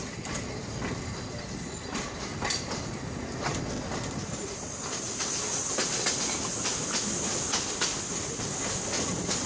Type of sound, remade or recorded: recorded